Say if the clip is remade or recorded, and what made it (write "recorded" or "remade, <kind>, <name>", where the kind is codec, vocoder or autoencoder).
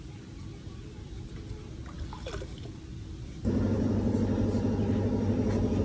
recorded